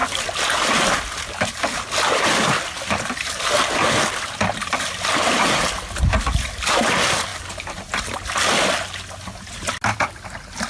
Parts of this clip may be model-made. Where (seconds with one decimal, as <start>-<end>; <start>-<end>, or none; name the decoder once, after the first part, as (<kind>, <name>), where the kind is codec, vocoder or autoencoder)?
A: none